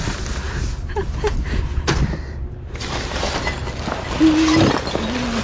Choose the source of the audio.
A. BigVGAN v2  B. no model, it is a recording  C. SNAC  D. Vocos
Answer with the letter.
B